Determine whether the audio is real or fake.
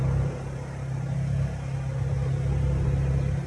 real